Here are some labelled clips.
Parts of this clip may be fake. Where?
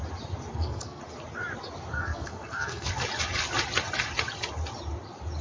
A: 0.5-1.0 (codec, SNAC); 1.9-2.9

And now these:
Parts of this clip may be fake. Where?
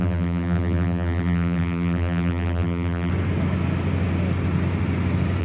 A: 0.0-3.1 (vocoder, BigVGAN v2)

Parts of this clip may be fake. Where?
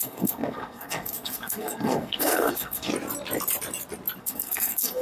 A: 0.0-2.9 (codec, SNAC); 4.2-5.0